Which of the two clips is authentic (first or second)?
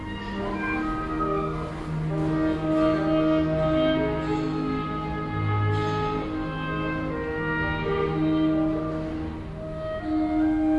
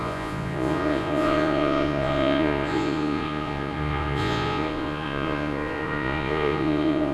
first